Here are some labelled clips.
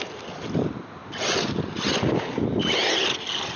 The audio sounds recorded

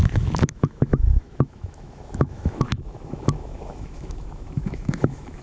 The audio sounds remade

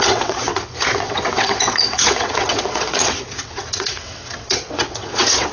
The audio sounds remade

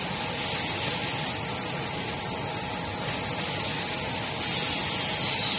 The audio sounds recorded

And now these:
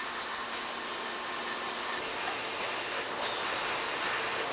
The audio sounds recorded